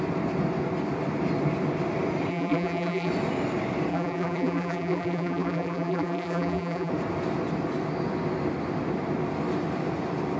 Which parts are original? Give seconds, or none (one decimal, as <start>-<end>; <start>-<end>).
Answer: 0.0-2.3; 3.1-3.9; 6.9-10.4